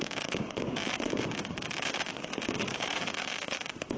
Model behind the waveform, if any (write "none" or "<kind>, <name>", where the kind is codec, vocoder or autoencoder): codec, DAC